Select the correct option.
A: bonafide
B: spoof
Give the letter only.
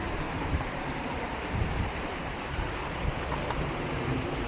B